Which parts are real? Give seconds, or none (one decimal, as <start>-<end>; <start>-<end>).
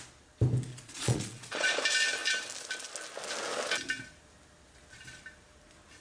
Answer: 0.0-0.7; 1.8-6.0